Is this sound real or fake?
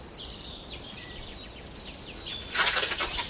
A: real